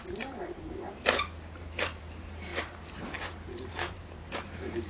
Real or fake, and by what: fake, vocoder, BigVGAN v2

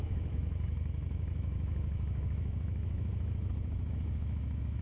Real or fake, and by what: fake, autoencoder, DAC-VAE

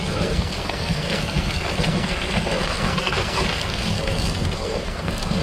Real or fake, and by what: fake, codec, SNAC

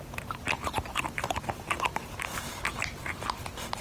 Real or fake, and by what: real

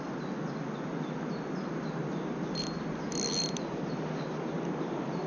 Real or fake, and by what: real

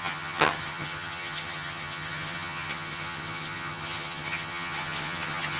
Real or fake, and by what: fake, vocoder, HiFi-GAN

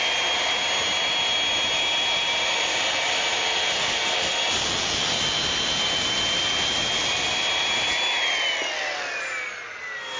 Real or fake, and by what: real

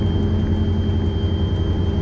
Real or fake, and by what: real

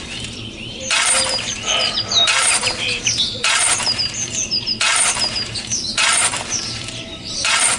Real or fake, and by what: fake, vocoder, BigVGAN v2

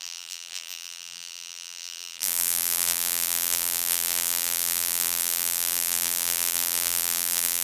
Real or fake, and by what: fake, vocoder, BigVGAN v2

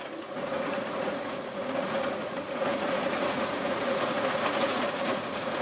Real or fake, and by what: fake, vocoder, Vocos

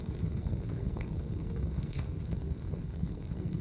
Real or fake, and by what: fake, codec, SNAC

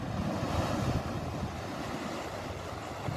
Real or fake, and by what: real